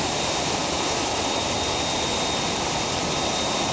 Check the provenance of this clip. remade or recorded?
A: recorded